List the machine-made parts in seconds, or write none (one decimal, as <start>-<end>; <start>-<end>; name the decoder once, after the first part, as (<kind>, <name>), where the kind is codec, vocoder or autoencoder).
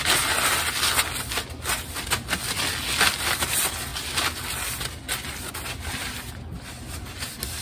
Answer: none